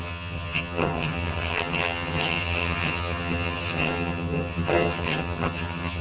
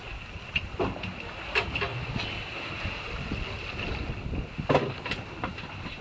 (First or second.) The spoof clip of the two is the first